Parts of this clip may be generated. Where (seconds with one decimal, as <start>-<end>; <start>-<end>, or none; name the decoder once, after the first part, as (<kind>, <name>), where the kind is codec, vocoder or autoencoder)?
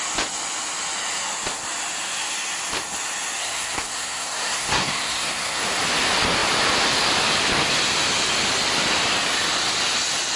3.4-5.6 (codec, SNAC)